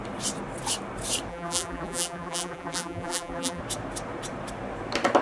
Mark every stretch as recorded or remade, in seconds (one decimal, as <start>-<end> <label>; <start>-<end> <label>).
0.0-1.3 recorded; 1.3-3.6 remade; 3.6-5.2 recorded